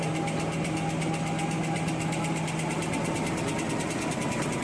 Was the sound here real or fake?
real